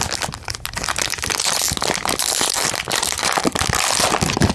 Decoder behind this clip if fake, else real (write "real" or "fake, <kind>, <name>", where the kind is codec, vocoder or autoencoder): real